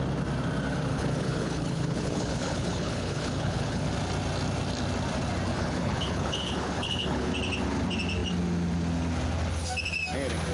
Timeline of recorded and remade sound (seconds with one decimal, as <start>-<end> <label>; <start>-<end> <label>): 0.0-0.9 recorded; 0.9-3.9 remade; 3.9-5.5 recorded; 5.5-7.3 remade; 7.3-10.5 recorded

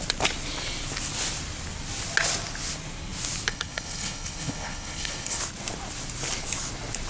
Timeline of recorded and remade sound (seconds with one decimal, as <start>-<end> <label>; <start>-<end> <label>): 0.0-3.5 recorded; 3.5-5.4 remade; 5.4-7.1 recorded

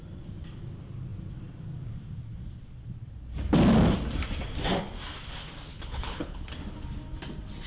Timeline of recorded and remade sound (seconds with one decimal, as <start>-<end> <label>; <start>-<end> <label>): 0.0-5.7 recorded; 5.7-6.5 remade; 6.5-7.7 recorded